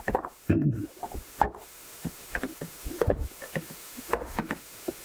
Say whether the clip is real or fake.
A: fake